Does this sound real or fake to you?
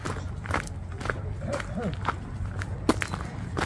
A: real